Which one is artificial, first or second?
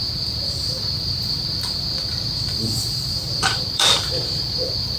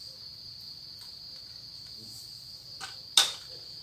first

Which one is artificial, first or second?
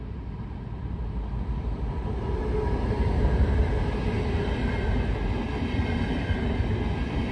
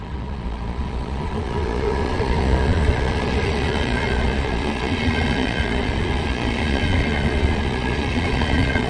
second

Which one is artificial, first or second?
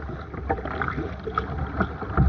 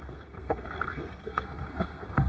second